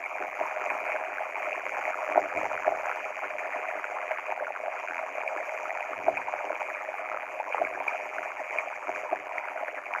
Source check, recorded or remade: remade